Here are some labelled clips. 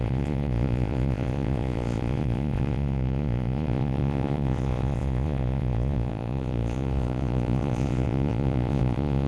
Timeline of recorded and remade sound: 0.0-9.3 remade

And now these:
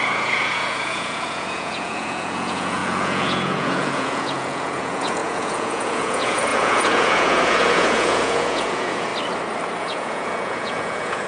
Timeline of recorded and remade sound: 0.0-9.1 remade; 9.1-9.8 recorded; 9.8-11.3 remade

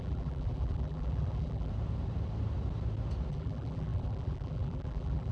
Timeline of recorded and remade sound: 0.0-1.7 remade; 1.7-3.3 recorded; 3.3-5.3 remade

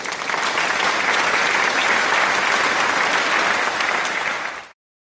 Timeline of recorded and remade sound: 0.0-5.0 recorded